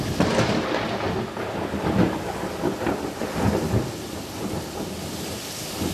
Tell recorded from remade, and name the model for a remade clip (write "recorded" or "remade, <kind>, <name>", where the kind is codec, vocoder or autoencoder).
recorded